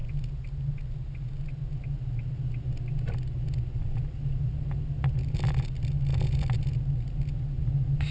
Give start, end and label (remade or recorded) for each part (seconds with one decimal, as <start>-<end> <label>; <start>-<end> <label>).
0.0-8.1 recorded